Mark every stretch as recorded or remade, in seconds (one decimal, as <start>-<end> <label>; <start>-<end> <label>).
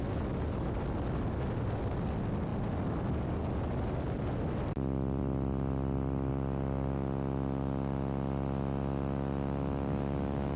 0.0-10.6 recorded